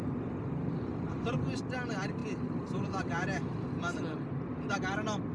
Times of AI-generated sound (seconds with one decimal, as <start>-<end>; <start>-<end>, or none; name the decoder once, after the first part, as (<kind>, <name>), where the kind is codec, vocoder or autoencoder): none